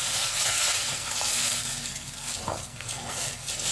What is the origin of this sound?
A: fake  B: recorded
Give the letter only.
A